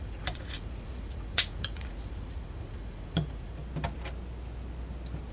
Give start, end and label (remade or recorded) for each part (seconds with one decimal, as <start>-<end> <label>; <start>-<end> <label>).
0.0-3.6 remade; 3.6-5.3 recorded